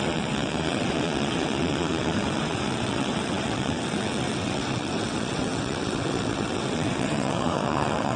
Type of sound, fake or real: fake